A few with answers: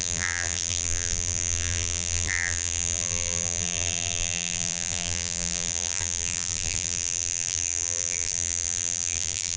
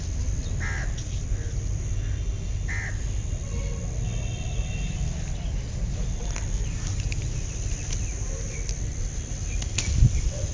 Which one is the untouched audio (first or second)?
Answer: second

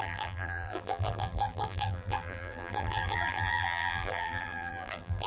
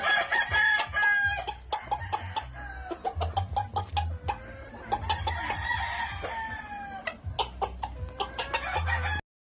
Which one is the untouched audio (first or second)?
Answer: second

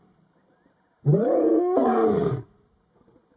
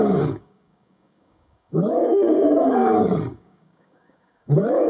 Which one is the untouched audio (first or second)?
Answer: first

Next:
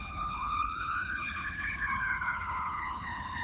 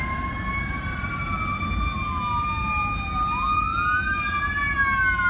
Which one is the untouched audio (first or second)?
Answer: second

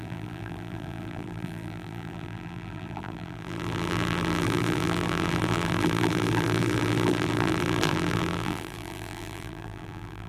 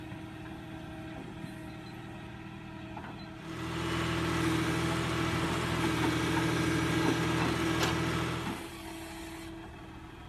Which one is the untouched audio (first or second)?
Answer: second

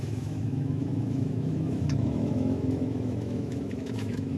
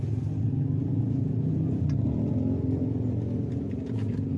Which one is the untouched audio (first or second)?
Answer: second